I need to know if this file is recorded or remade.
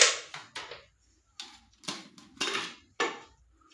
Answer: recorded